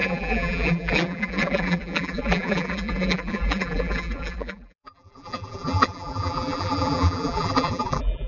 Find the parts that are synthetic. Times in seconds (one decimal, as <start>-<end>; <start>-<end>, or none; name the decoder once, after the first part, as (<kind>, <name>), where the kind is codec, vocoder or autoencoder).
0.0-8.3 (vocoder, BigVGAN v2)